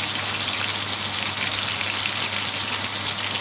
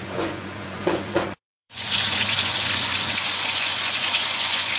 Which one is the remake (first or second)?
second